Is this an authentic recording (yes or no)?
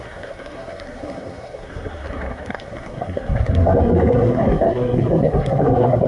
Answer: no